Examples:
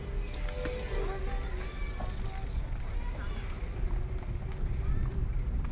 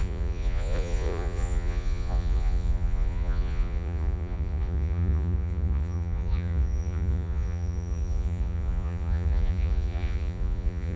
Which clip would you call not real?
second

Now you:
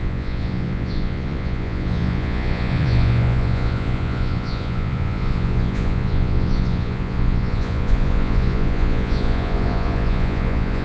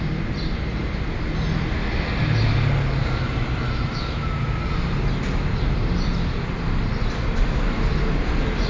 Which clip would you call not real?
first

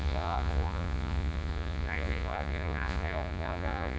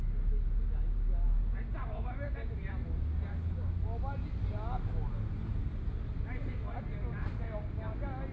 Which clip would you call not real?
first